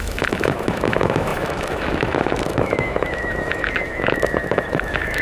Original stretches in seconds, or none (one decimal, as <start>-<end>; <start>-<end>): none